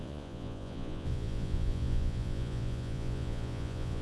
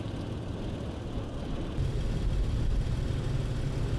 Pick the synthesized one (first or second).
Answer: first